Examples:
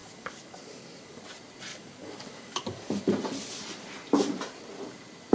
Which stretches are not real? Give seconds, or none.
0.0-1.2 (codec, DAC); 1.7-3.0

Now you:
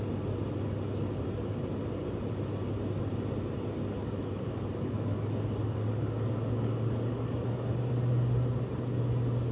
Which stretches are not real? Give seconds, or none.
4.0-7.9 (codec, DAC)

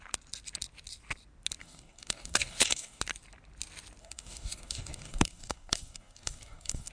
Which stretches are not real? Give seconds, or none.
1.6-3.0 (codec, DAC); 4.0-6.9

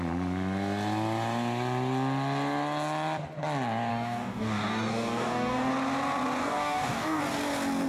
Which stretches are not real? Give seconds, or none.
3.9-5.7 (codec, DAC); 6.4-7.2